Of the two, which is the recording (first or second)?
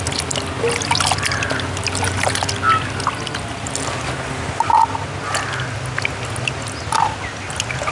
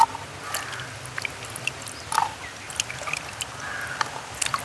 first